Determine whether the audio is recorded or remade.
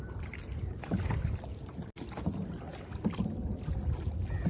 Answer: recorded